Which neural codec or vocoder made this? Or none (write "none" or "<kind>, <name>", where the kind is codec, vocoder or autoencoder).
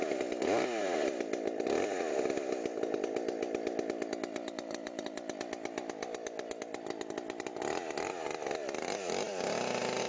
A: none